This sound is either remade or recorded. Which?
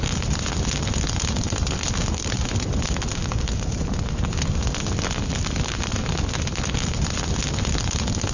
recorded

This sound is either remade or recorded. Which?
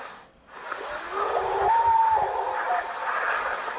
recorded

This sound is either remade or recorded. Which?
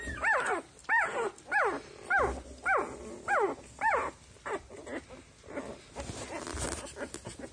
recorded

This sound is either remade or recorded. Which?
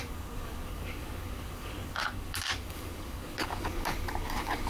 remade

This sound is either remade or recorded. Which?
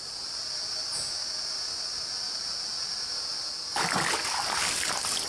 recorded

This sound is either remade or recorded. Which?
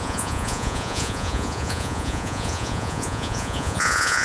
remade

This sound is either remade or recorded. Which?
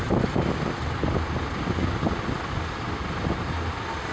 recorded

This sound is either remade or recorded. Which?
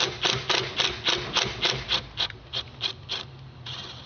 recorded